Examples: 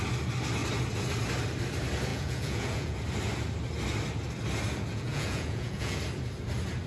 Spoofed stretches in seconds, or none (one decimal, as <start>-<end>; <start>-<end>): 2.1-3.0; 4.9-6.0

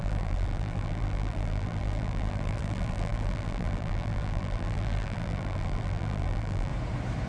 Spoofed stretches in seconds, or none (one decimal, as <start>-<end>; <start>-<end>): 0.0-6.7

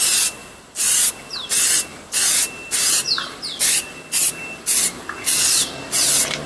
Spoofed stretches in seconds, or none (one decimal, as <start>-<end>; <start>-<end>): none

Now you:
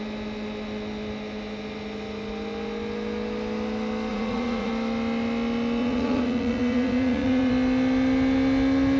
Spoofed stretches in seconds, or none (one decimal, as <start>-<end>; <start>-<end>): 4.1-4.7; 5.8-7.5

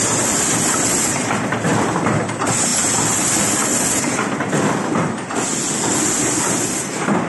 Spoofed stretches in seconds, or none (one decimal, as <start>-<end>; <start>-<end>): none

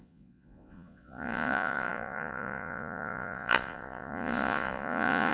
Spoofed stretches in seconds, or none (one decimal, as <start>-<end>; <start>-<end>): 0.0-5.3